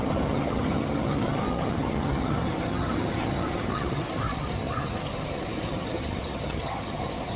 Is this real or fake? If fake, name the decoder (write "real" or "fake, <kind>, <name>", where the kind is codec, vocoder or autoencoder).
fake, vocoder, HiFi-GAN